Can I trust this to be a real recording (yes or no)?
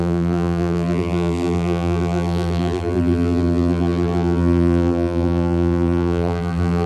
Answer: no